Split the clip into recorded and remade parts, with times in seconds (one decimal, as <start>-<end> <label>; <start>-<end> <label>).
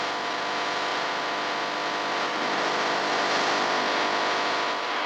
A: 0.0-5.1 recorded